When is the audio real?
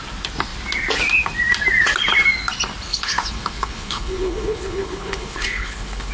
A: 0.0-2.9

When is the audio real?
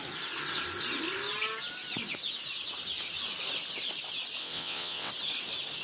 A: 0.0-4.4; 5.1-5.8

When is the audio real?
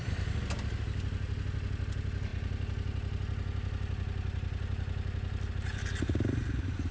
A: 0.0-6.9